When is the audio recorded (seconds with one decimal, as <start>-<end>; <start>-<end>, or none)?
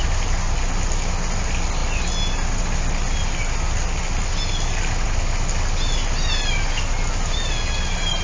0.0-8.2